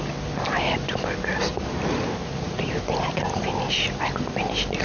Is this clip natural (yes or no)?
no